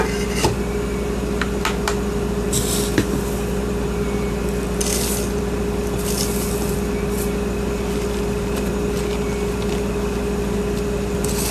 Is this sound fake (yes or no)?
yes